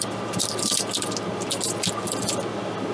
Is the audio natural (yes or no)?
yes